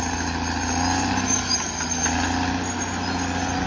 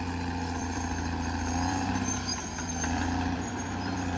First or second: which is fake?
second